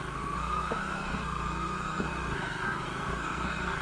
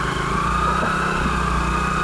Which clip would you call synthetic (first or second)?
first